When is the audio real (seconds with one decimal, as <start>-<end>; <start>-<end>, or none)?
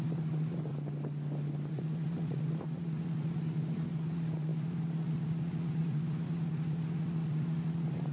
0.7-1.7